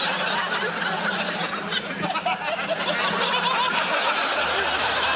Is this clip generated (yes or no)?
no